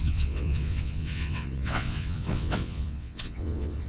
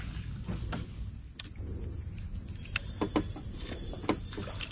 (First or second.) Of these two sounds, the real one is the second